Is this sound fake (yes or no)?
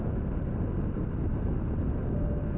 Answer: no